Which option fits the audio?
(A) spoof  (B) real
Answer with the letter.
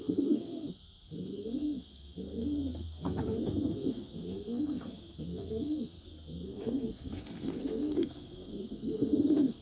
A